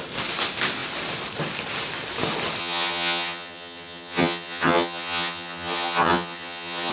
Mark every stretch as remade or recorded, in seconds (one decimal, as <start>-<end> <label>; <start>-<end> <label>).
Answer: 0.0-2.6 recorded; 2.6-6.9 remade